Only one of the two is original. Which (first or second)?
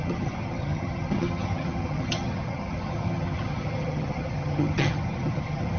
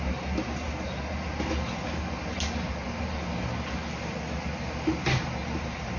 second